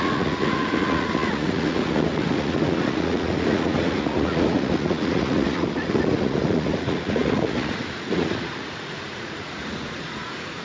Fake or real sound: fake